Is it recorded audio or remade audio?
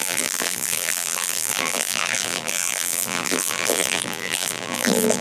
remade